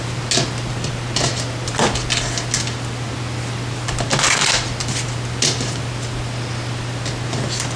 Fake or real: real